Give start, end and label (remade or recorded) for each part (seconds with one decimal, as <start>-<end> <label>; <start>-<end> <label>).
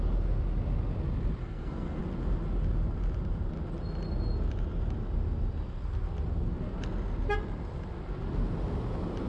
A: 0.0-1.4 recorded; 1.4-2.0 remade; 2.0-9.3 recorded